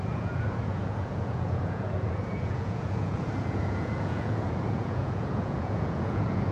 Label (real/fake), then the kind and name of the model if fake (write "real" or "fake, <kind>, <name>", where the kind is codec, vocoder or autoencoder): fake, vocoder, Vocos